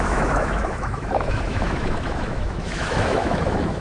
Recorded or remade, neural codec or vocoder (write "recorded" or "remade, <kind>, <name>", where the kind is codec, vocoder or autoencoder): remade, autoencoder, DAC-VAE